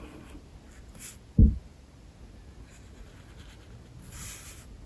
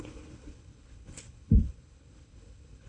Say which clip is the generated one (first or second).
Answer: second